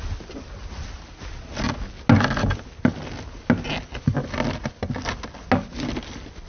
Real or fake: real